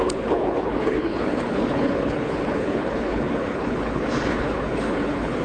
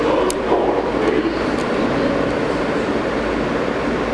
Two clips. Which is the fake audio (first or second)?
first